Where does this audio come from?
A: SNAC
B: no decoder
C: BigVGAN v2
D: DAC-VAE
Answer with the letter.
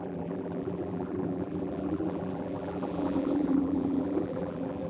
C